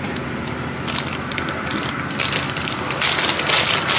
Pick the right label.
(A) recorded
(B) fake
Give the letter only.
B